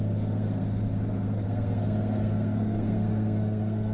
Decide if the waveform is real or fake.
fake